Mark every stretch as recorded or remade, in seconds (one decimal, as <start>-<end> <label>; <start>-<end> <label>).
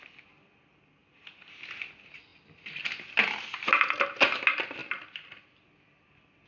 0.0-6.5 recorded